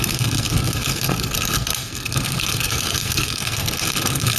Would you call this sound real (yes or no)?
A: no